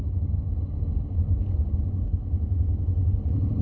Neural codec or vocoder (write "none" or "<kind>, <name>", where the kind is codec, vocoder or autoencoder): none